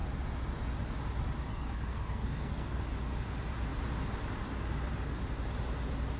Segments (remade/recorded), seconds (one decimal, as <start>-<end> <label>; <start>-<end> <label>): 0.0-1.5 recorded; 1.5-2.8 remade; 2.8-6.2 recorded